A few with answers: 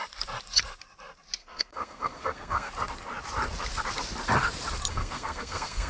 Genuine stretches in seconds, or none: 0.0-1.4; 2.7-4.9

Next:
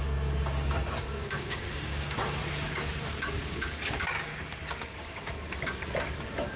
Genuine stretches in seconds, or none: 2.4-3.2

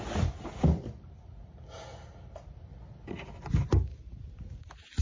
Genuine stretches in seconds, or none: 0.0-5.0

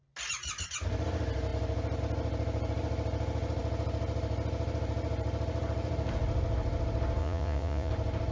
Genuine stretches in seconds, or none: 0.0-7.2; 7.9-8.3

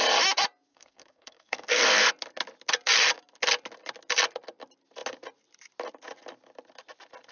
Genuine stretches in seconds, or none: 0.0-0.7; 2.1-7.3

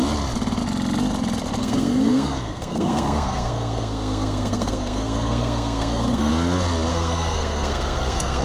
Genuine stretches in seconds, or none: 0.0-1.6; 6.3-6.9